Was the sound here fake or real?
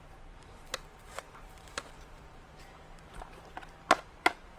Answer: fake